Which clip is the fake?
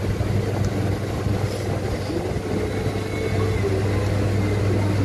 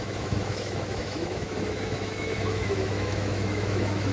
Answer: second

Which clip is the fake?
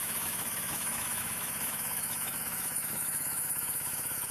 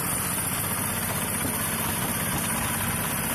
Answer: first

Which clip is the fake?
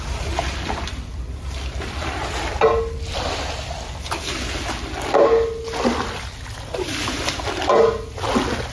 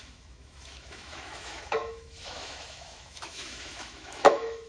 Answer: second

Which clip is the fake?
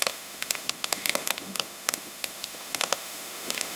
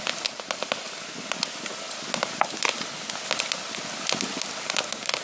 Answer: first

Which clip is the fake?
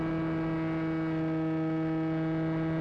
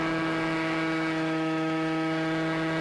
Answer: second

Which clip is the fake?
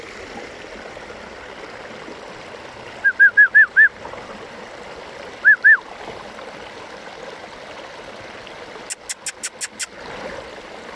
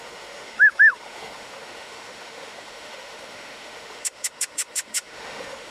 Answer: second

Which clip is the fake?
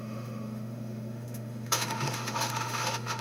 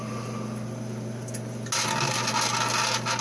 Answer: first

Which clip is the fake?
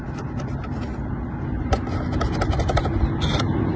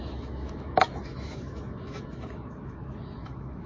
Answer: second